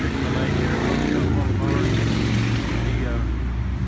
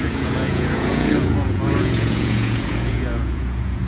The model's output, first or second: second